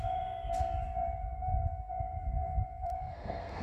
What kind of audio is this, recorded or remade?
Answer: remade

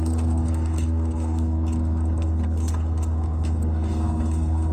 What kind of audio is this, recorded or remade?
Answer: remade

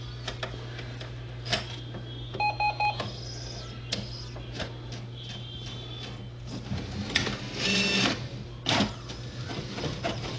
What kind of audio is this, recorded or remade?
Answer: recorded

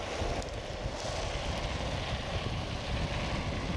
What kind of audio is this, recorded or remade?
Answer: recorded